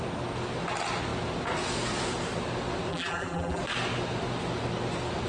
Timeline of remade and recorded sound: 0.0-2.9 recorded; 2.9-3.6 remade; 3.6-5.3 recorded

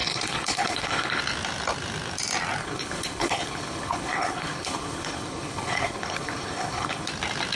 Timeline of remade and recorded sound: 0.0-1.2 remade; 1.2-2.6 recorded; 2.6-7.1 remade; 7.1-7.5 recorded

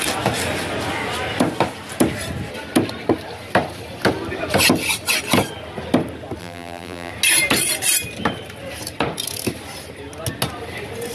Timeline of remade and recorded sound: 0.0-6.4 recorded; 6.4-7.1 remade; 7.1-11.1 recorded

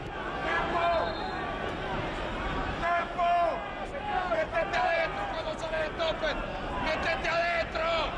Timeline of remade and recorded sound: 0.0-8.2 recorded

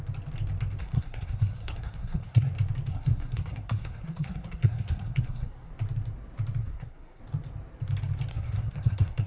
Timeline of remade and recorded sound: 0.0-0.8 recorded; 0.8-2.5 remade; 2.5-2.9 recorded; 2.9-5.7 remade; 5.7-6.6 recorded; 6.6-7.2 remade; 7.2-8.3 recorded; 8.3-9.3 remade

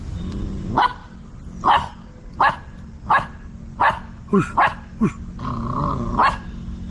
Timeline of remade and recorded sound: 0.0-6.9 recorded